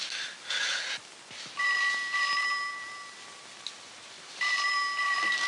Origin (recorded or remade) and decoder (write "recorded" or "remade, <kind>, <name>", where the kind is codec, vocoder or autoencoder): recorded